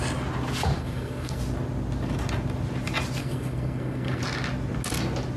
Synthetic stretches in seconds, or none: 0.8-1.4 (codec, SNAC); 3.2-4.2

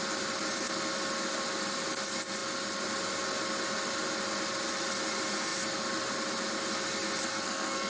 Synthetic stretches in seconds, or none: 7.3-7.9 (codec, SNAC)

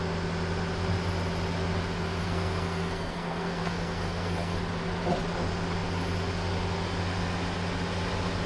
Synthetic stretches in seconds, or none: 2.2-4.6 (codec, SNAC)